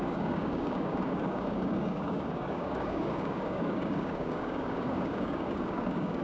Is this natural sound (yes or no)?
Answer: no